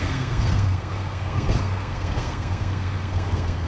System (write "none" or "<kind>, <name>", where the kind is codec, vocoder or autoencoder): codec, SNAC